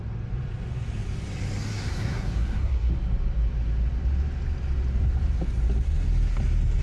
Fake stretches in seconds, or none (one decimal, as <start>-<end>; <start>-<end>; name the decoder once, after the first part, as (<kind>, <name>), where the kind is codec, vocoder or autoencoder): 1.7-2.9 (codec, SNAC)